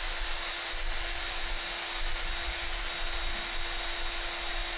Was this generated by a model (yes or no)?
no